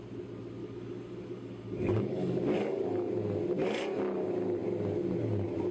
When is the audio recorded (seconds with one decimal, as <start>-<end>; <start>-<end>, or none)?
0.0-0.6; 3.1-5.7